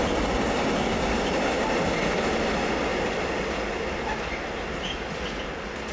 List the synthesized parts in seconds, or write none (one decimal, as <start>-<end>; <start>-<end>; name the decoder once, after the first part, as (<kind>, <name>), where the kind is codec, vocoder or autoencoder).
none